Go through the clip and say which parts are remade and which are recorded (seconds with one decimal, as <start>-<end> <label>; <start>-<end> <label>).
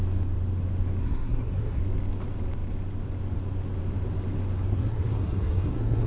0.0-1.0 recorded; 1.0-1.8 remade; 1.8-4.7 recorded; 4.7-6.1 remade